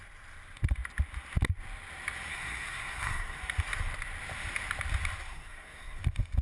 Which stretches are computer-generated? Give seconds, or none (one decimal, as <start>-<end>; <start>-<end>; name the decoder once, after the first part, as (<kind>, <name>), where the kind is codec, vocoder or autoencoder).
2.3-3.4 (codec, SNAC); 5.3-6.0